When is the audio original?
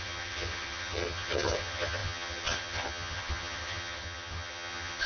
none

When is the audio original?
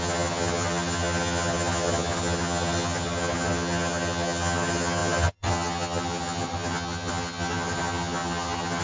none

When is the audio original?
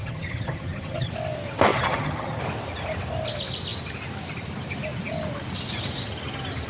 1.1-1.7; 2.4-6.7